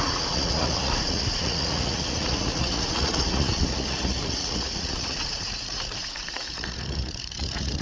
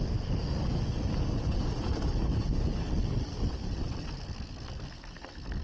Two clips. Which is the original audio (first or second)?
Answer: second